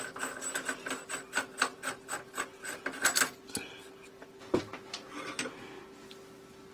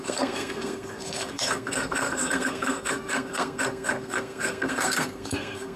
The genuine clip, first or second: first